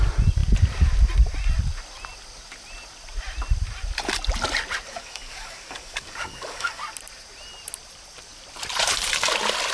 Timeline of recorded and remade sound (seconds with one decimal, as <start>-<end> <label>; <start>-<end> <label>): 0.0-4.9 recorded; 4.9-6.8 remade; 6.8-9.7 recorded